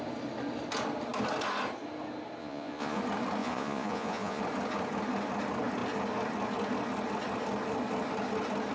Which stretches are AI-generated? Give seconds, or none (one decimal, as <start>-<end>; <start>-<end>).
2.4-3.0; 3.4-4.4